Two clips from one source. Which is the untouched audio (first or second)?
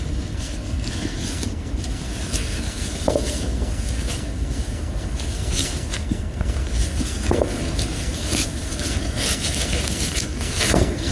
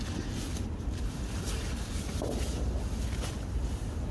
second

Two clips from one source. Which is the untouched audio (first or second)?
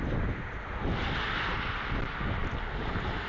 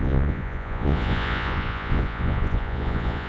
first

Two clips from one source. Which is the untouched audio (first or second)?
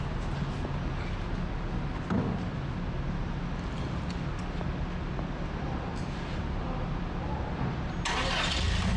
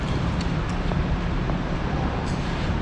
first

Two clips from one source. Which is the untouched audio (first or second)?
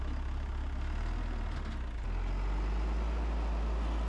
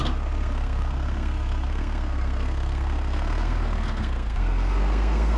first